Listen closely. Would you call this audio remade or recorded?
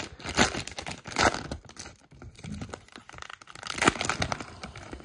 recorded